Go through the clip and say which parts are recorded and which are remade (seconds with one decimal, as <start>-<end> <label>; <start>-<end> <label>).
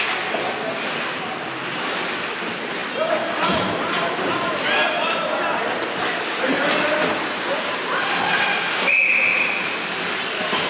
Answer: 0.0-9.3 recorded; 9.3-9.9 remade; 9.9-10.7 recorded